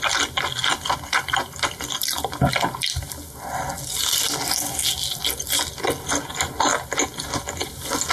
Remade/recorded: recorded